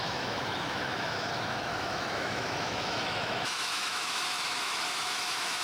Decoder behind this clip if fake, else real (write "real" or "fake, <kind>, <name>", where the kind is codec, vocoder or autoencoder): fake, autoencoder, DAC-VAE